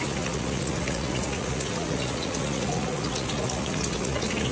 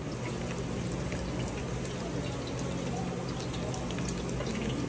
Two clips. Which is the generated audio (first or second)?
first